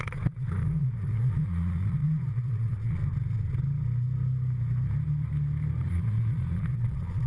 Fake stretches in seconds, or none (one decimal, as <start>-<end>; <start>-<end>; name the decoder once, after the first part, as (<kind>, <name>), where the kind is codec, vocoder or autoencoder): 0.0-3.0 (vocoder, Vocos); 5.9-7.3